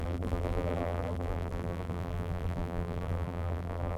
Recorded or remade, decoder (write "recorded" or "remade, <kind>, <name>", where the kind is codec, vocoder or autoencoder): remade, vocoder, BigVGAN v2